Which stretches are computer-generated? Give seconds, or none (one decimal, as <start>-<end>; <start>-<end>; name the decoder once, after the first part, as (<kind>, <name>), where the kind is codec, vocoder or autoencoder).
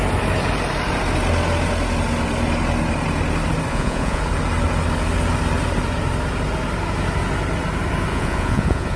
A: 3.7-4.2 (vocoder, Vocos); 8.1-9.0